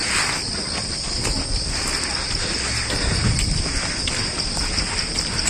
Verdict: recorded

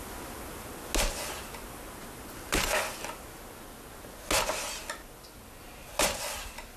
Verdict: recorded